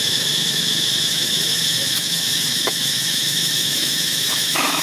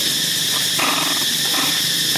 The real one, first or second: second